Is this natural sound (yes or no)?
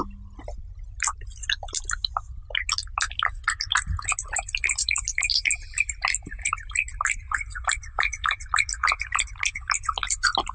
yes